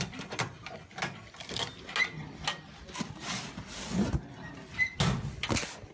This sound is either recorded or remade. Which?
recorded